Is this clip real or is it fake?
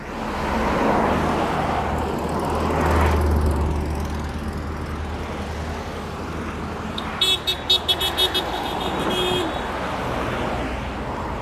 real